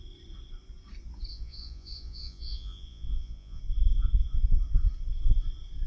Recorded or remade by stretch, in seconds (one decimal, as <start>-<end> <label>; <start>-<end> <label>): 0.0-1.3 recorded; 1.3-3.6 remade; 3.6-5.9 recorded